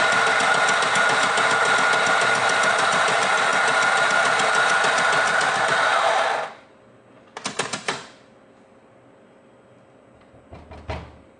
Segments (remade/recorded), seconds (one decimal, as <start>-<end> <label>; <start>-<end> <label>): 0.0-11.4 recorded